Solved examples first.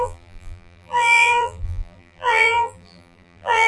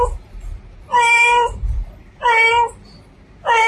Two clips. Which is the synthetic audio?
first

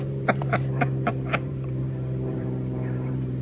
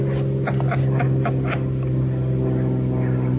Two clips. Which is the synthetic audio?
first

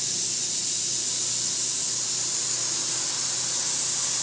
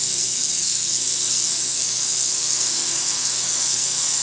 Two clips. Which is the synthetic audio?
second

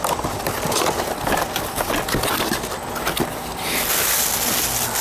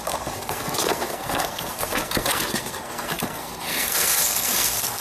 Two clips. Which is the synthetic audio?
second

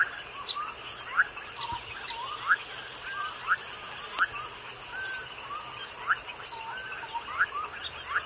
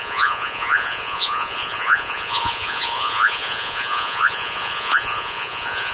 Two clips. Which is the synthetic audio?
second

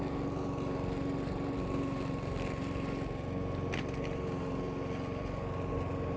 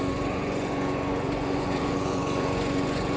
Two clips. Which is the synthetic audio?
second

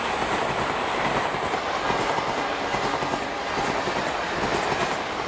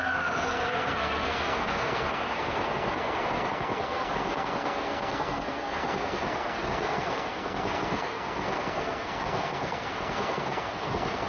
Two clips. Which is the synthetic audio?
second